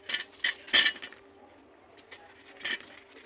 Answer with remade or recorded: recorded